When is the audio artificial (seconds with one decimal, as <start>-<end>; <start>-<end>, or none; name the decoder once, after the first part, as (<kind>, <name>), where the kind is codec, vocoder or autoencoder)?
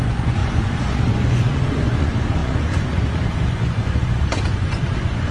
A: 0.0-5.3 (vocoder, Vocos)